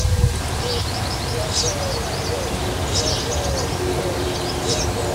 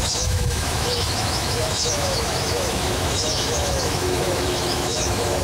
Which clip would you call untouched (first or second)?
first